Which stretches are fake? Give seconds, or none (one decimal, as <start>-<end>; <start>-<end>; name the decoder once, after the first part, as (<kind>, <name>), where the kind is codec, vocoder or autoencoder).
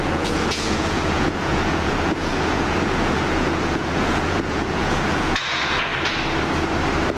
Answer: 0.0-5.9 (vocoder, Vocos)